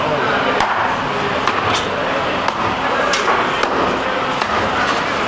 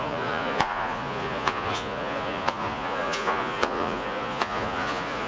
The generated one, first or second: second